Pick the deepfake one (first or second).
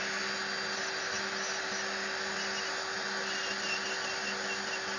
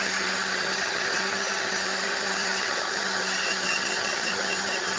second